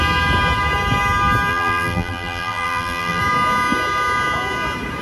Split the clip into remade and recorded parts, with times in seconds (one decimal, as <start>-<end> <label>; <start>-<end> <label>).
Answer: 0.0-1.5 recorded; 1.5-3.2 remade; 3.2-5.0 recorded